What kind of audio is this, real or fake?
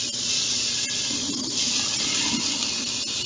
real